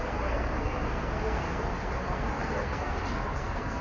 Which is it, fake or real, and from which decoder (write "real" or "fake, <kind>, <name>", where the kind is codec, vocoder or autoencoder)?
fake, codec, SNAC